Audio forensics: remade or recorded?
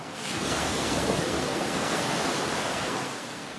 remade